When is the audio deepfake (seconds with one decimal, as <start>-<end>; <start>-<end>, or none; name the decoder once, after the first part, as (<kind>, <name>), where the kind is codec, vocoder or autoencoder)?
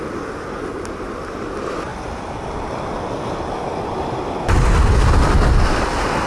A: none